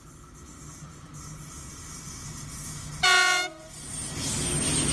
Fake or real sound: real